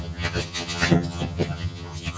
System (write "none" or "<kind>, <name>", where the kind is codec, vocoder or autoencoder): vocoder, HiFi-GAN